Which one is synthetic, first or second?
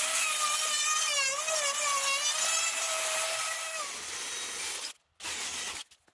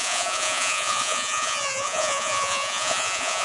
second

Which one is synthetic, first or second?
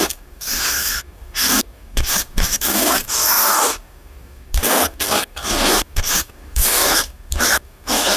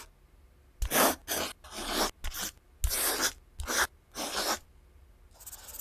first